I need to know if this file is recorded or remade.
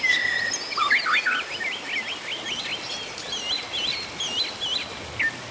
recorded